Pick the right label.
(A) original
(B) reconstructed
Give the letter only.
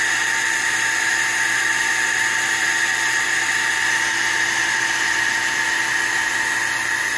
A